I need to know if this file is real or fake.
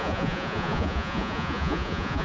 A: fake